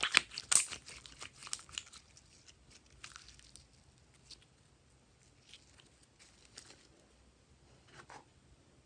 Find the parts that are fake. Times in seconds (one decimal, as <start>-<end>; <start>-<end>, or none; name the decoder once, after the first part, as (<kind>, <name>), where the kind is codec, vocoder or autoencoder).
none